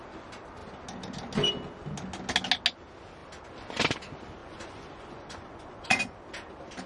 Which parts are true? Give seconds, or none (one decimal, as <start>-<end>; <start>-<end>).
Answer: 0.0-4.4; 6.0-6.9